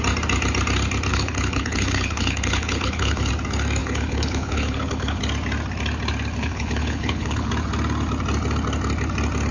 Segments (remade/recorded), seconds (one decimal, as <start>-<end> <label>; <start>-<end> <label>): 0.0-1.1 recorded; 1.1-3.3 remade; 3.3-3.8 recorded; 3.8-5.2 remade; 5.2-6.4 recorded; 6.4-7.5 remade; 7.5-9.5 recorded